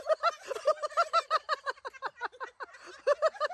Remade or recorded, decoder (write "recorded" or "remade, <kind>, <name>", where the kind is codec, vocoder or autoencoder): recorded